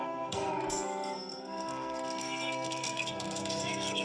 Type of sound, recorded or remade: remade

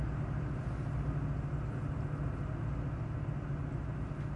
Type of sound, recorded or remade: recorded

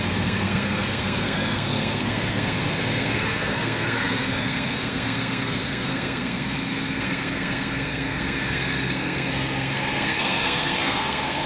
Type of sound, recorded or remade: remade